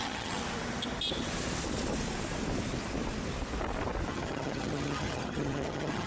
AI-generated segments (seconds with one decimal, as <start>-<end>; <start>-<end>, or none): 0.0-0.4; 4.1-6.1